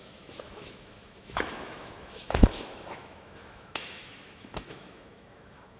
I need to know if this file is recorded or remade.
remade